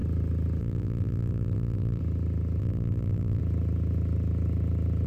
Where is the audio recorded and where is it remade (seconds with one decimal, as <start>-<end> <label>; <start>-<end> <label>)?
0.0-0.6 recorded; 0.6-2.0 remade; 2.0-2.6 recorded; 2.6-3.4 remade; 3.4-5.1 recorded